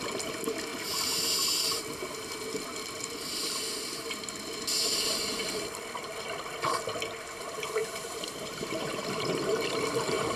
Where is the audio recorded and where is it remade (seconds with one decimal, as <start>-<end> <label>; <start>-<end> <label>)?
0.0-7.8 recorded; 7.8-10.4 remade